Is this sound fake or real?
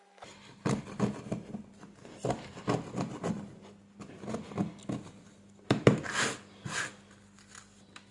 real